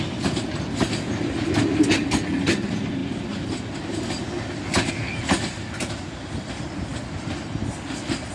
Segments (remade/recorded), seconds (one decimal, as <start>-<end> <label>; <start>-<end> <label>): 0.0-8.3 recorded